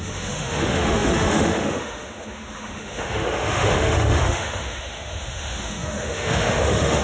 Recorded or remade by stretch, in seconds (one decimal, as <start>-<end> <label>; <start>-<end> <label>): 0.0-7.0 remade